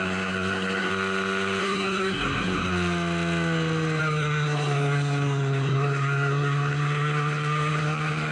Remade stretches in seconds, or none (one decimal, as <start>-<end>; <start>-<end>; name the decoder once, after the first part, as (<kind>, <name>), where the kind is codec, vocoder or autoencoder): 0.0-0.9 (codec, SNAC); 1.6-2.7; 4.0-8.3